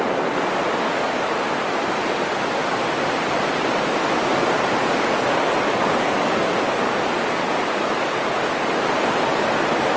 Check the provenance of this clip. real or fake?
real